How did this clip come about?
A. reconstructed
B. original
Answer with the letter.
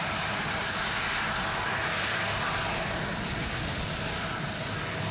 B